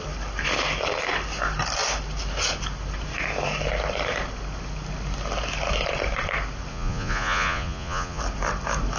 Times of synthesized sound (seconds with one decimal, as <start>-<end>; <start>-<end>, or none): 6.7-8.2